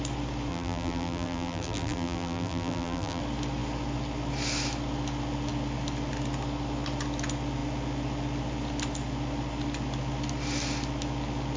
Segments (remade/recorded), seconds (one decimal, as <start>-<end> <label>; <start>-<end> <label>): 0.0-0.5 recorded; 0.5-3.2 remade; 3.2-11.6 recorded